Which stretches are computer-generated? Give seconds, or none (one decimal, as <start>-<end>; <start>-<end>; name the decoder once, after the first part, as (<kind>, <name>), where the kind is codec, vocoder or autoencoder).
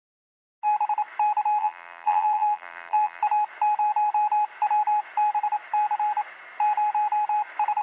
1.6-3.2 (vocoder, BigVGAN v2)